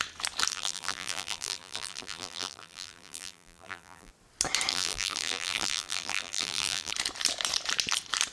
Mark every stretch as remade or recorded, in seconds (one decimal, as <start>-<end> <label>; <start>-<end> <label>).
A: 0.0-0.5 recorded; 0.5-4.1 remade; 4.1-4.7 recorded; 4.7-6.9 remade; 6.9-8.3 recorded